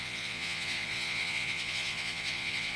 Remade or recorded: remade